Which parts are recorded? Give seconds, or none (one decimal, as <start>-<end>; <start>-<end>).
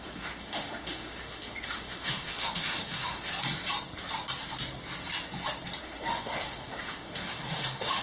3.3-5.8